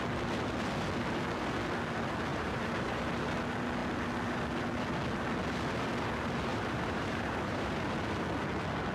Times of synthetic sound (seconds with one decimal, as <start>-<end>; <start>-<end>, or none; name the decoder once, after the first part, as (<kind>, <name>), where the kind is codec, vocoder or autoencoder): 2.3-3.1 (vocoder, BigVGAN v2); 6.5-7.7